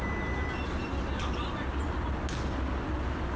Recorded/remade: recorded